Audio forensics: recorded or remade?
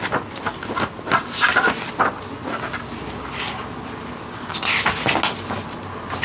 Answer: recorded